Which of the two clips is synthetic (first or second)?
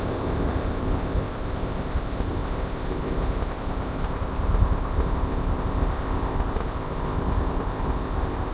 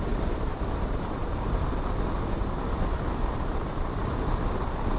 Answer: first